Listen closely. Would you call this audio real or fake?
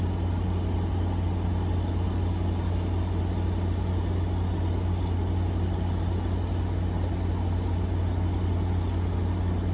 real